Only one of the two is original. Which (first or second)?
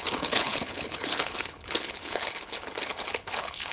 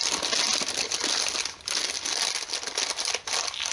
second